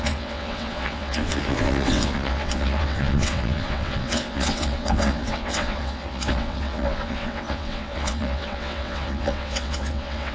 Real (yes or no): no